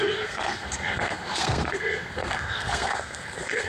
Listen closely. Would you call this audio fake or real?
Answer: fake